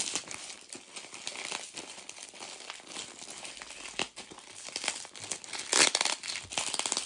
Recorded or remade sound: recorded